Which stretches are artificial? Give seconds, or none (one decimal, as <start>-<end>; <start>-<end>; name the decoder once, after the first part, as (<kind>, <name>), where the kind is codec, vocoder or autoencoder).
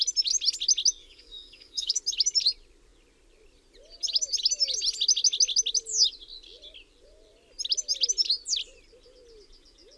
1.0-2.0 (codec, DAC)